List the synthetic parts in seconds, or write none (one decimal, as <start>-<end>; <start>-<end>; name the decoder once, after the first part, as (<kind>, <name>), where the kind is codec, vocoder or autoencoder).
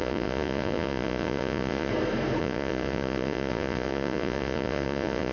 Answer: 0.0-1.9 (vocoder, Vocos); 2.4-5.3